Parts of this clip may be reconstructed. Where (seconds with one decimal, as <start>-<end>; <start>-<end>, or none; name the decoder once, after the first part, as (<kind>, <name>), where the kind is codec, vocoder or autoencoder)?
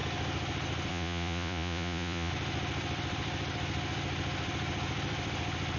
0.9-2.3 (vocoder, Vocos)